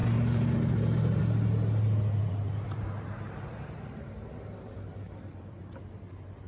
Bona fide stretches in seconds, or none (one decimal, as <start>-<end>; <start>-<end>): 1.2-2.2; 4.9-6.5